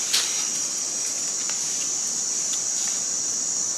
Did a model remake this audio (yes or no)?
no